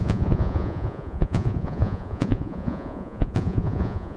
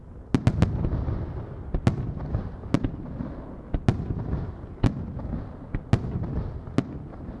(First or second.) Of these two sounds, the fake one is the first